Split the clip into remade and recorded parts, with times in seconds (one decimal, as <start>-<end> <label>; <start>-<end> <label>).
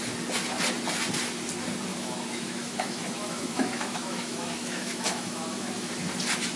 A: 0.0-1.9 recorded; 1.9-5.9 remade; 5.9-6.6 recorded